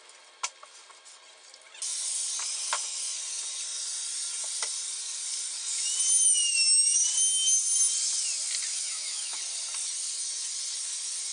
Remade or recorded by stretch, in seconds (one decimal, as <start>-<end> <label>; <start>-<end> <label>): 0.0-8.7 recorded; 8.7-9.4 remade; 9.4-11.3 recorded